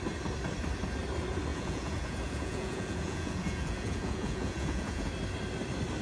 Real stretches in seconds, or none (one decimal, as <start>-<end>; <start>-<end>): 0.0-1.5; 5.1-6.0